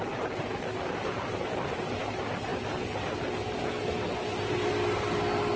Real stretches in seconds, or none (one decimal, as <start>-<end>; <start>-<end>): 0.0-5.6